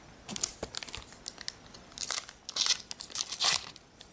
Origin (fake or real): real